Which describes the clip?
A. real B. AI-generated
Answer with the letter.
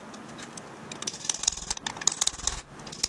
A